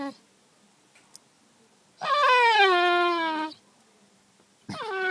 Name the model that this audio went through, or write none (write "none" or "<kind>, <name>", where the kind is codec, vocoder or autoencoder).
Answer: none